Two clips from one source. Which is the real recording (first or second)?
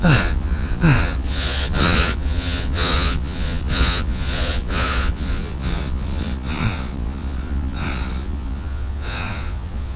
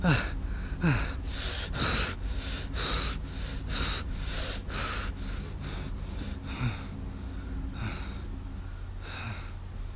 second